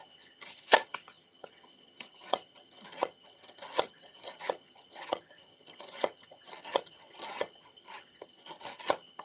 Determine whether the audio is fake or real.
fake